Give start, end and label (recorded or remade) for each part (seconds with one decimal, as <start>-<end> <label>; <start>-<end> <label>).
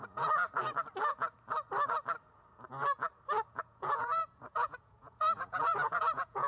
0.0-0.4 remade; 0.4-3.6 recorded; 3.6-6.5 remade